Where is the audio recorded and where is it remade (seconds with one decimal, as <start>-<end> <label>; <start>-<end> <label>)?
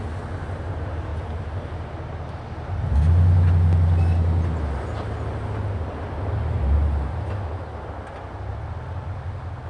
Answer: 0.0-9.7 recorded